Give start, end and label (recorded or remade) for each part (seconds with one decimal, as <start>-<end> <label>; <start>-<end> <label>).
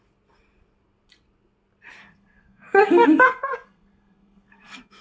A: 0.0-2.0 recorded; 2.0-5.0 remade